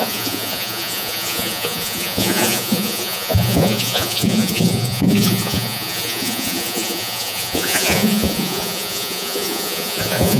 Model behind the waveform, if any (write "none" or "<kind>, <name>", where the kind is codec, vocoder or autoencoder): vocoder, Vocos